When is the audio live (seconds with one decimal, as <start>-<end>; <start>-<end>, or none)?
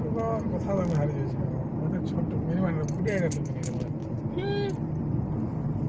0.0-5.9